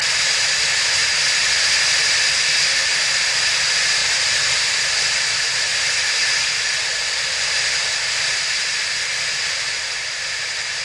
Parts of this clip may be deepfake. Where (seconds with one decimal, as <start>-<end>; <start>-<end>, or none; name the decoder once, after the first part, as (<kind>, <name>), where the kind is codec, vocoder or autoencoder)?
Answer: 4.0-4.6 (vocoder, BigVGAN v2)